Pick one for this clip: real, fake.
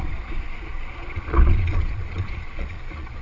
fake